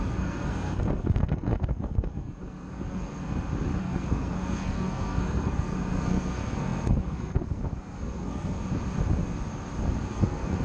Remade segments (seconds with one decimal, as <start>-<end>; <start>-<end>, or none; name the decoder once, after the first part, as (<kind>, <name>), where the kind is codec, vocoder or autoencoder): 0.0-3.2 (codec, SNAC); 3.8-8.6; 10.1-10.6